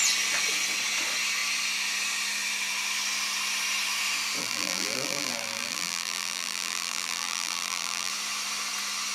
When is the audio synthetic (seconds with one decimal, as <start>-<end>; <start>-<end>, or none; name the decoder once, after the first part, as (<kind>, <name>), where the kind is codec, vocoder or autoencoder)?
4.4-8.1 (vocoder, BigVGAN v2)